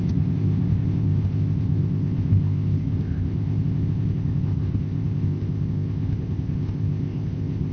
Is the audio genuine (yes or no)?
no